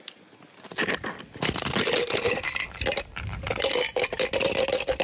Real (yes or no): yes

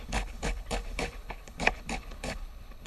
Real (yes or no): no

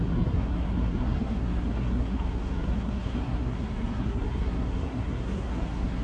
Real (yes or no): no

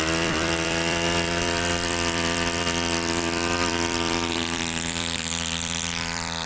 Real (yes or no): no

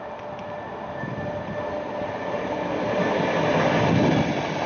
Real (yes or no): yes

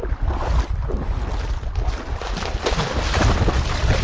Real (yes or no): yes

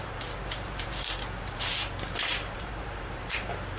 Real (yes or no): no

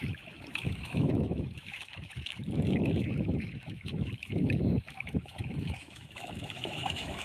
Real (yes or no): no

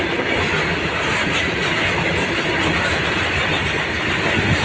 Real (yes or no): yes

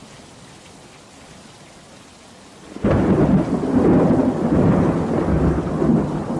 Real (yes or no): yes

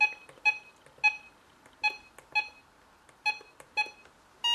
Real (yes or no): yes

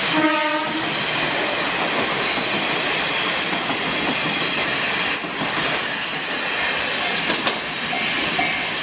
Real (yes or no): yes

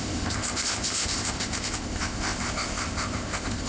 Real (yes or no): no